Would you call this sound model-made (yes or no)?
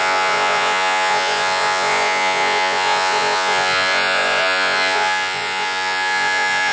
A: yes